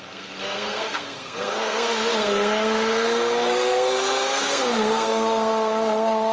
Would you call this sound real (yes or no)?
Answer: no